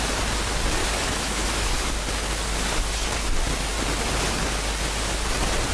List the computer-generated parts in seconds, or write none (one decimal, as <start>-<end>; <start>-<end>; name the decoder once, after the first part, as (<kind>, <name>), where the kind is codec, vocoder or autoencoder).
0.8-1.9 (autoencoder, DAC-VAE)